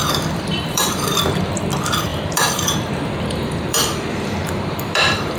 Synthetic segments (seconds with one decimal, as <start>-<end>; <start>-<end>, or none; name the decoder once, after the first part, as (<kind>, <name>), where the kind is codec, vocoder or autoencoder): 0.0-1.6 (vocoder, BigVGAN v2); 2.1-5.4